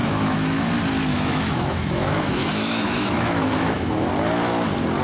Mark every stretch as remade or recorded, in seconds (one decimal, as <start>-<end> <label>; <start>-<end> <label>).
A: 0.0-0.7 remade; 0.7-1.1 recorded; 1.1-4.1 remade; 4.1-5.0 recorded